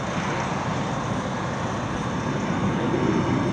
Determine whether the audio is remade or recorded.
recorded